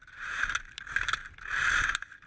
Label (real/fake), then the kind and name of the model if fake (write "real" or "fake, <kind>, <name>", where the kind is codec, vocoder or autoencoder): fake, vocoder, BigVGAN v2